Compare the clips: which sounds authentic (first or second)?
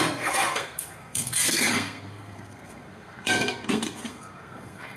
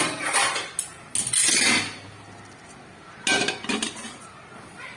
second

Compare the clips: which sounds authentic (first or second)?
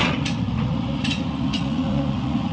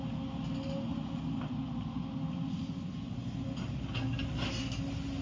second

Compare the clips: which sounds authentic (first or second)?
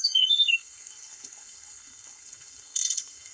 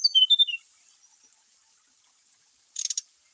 second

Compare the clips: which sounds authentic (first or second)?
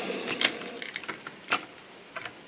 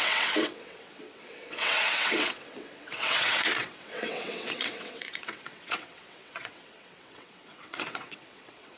first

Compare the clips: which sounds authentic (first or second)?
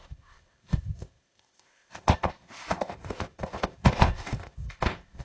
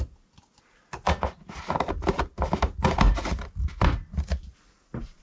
second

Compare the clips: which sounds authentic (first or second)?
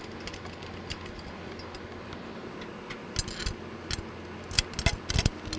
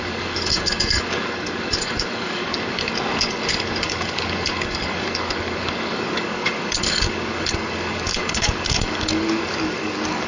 first